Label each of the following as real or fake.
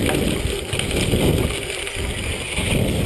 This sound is real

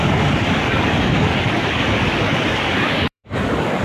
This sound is fake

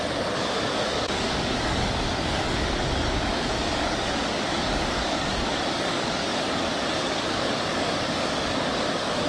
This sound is fake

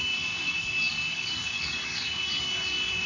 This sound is fake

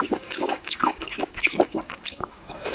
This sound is fake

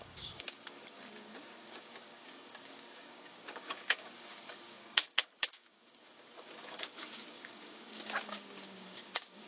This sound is fake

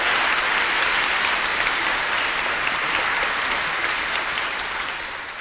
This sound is real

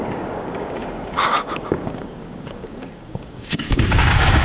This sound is fake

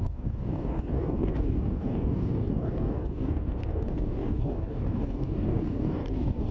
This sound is fake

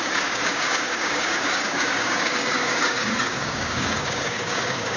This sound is fake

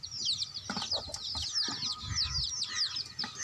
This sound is real